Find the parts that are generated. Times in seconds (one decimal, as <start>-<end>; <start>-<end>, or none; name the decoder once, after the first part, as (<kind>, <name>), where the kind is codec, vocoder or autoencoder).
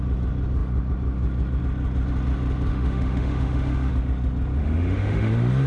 2.7-3.9 (autoencoder, DAC-VAE); 4.6-5.3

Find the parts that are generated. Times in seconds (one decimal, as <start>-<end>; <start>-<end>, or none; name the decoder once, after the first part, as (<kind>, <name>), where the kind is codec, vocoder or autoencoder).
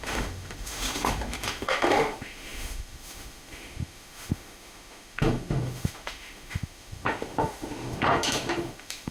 0.0-9.1 (autoencoder, DAC-VAE)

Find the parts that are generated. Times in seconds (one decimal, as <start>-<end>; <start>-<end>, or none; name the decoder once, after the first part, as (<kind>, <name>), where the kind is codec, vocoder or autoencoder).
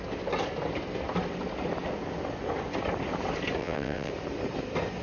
3.6-4.1 (vocoder, WaveNeXt)